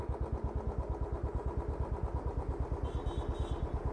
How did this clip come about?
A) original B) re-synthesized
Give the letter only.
A